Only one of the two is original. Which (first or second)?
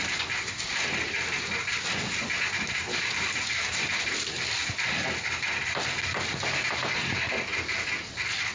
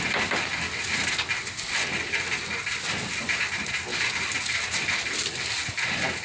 second